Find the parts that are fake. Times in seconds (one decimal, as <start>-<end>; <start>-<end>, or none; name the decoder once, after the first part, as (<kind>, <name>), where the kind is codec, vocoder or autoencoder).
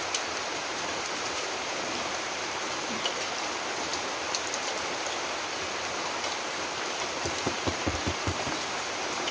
0.0-3.9 (vocoder, BigVGAN v2); 6.5-9.3